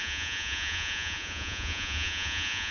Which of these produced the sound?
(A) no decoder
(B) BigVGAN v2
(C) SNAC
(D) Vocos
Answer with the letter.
D